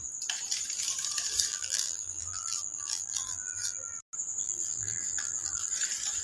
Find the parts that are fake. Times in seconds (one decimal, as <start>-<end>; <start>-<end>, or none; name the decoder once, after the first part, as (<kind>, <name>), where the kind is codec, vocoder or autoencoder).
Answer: 1.5-4.0 (vocoder, BigVGAN v2); 4.4-5.7